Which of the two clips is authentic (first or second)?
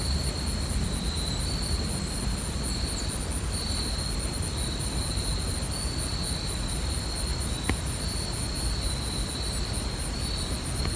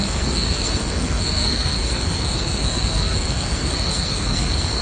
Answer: first